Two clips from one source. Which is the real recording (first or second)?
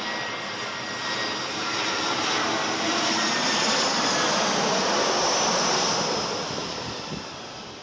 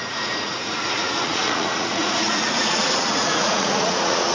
first